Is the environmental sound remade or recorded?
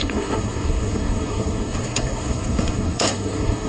remade